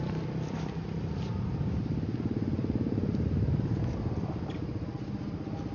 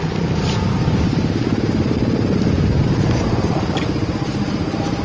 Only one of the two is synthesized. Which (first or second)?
second